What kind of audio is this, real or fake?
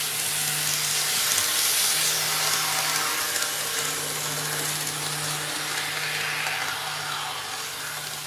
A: real